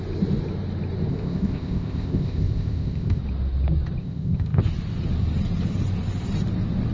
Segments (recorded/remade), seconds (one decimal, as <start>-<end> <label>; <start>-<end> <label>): 0.0-1.1 recorded; 1.1-3.2 remade; 3.2-4.0 recorded; 4.0-4.6 remade; 4.6-6.9 recorded